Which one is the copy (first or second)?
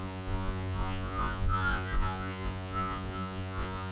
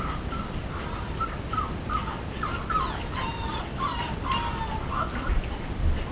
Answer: first